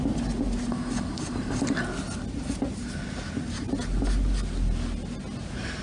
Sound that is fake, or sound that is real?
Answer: real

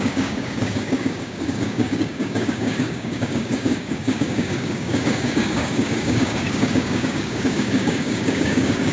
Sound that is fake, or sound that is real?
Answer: fake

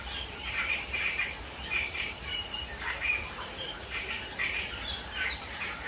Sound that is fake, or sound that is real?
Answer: fake